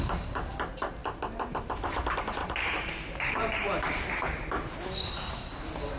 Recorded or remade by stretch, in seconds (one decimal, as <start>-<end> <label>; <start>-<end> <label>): 0.0-2.4 recorded; 2.4-4.1 remade; 4.1-6.0 recorded

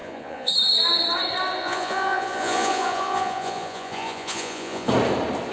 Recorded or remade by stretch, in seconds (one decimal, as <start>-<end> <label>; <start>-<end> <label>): 0.0-0.5 remade; 0.5-1.6 recorded; 1.6-4.9 remade; 4.9-5.5 recorded

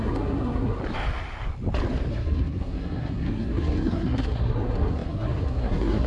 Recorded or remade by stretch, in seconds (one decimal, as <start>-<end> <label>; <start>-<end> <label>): 0.0-0.8 remade; 0.8-2.1 recorded; 2.1-6.1 remade

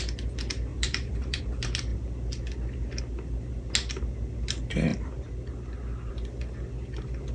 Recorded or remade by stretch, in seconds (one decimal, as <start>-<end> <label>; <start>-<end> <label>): 0.0-0.7 recorded; 0.7-1.4 remade; 1.4-7.3 recorded

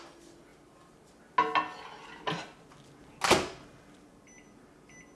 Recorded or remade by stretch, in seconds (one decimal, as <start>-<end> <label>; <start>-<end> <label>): 0.0-5.1 recorded

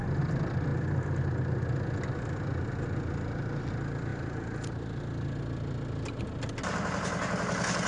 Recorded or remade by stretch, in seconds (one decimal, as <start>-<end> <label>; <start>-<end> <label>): 0.0-7.9 recorded

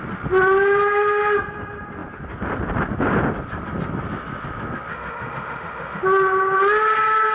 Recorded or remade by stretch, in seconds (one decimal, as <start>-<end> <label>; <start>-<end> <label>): 0.0-4.9 recorded; 4.9-6.0 remade; 6.0-7.3 recorded